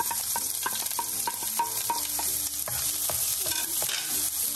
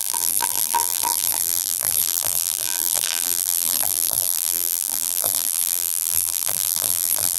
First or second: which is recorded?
first